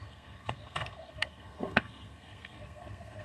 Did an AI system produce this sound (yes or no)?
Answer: yes